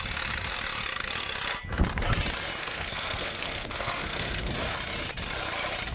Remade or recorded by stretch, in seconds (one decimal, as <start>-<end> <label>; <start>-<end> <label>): 0.0-2.6 recorded; 2.6-4.5 remade; 4.5-5.9 recorded